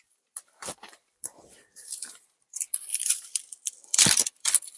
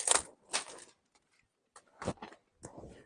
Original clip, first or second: second